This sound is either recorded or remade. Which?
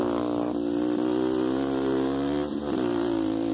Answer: recorded